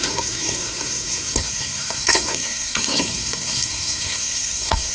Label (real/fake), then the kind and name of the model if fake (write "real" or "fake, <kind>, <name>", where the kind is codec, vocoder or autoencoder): fake, codec, SNAC